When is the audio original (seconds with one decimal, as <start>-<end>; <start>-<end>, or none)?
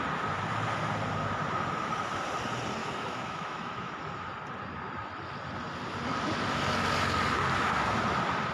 0.0-2.8; 3.9-8.5